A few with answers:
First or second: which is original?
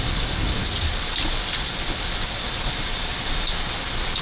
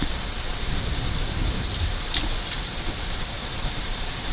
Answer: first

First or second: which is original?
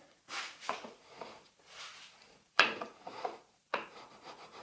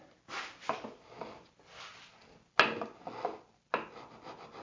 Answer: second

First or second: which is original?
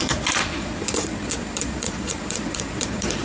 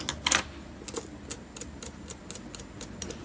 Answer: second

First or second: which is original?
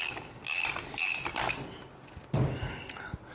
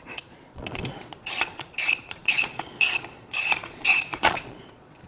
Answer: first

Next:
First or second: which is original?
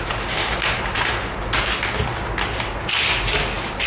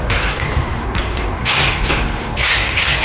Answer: first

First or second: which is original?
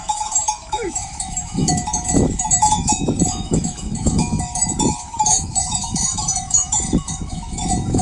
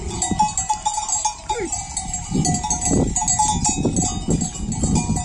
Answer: second